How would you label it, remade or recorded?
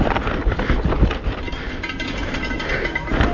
recorded